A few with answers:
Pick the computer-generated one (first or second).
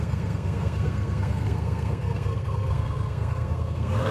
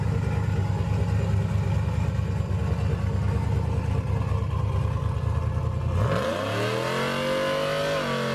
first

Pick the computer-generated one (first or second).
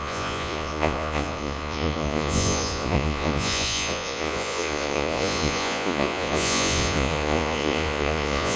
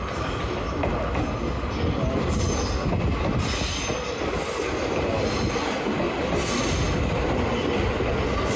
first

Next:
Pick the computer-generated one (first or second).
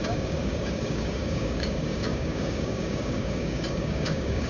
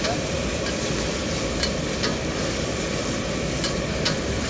first